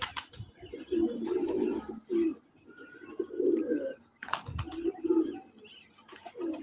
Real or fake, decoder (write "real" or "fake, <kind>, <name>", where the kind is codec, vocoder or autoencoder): real